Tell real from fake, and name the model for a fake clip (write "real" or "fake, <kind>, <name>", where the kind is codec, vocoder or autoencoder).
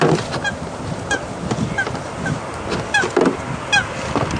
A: real